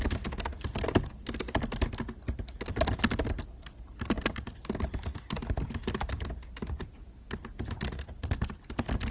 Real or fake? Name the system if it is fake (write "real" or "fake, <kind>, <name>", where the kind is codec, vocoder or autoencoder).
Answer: real